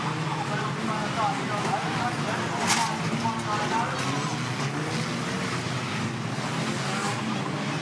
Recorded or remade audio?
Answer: recorded